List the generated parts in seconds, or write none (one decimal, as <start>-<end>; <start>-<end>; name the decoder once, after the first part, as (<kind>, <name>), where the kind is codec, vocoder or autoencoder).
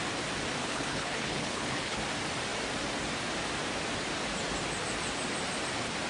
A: 0.6-2.0 (codec, HILCodec)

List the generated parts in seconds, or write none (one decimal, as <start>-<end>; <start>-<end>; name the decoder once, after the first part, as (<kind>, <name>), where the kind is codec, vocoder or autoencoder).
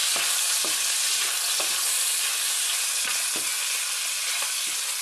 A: 0.0-3.0 (vocoder, BigVGAN v2)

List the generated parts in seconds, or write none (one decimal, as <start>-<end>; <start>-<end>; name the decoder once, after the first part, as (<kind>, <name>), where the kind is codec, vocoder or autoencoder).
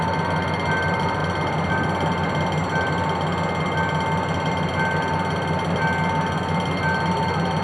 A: none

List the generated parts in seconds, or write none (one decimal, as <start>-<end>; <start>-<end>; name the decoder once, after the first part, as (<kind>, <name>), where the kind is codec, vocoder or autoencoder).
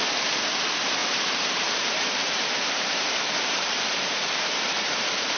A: 1.0-4.2 (vocoder, BigVGAN v2)